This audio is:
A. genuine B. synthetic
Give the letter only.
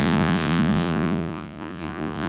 B